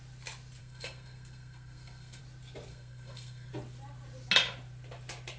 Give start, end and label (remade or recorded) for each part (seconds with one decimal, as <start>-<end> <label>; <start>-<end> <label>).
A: 0.0-0.6 recorded; 0.6-2.2 remade; 2.2-2.7 recorded; 2.7-3.5 remade; 3.5-5.4 recorded